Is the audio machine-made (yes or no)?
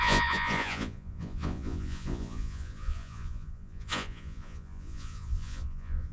yes